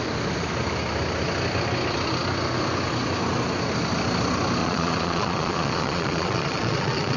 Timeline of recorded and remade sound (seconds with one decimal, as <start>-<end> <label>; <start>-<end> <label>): 0.0-4.6 recorded; 4.6-7.2 remade